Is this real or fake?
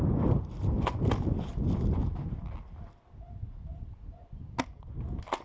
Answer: real